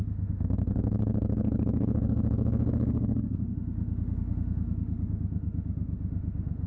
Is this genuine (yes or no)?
no